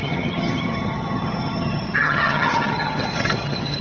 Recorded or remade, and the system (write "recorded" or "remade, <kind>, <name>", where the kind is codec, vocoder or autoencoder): remade, vocoder, HiFi-GAN